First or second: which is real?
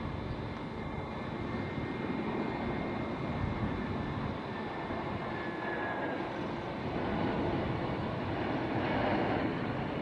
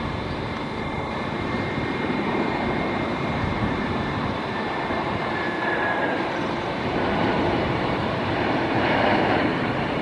first